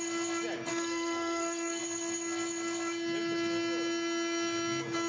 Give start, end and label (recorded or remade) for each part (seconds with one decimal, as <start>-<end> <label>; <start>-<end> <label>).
0.0-0.7 recorded; 0.7-1.8 remade; 1.8-5.1 recorded